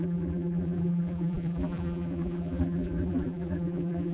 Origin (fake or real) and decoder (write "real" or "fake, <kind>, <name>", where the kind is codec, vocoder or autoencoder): fake, vocoder, BigVGAN v2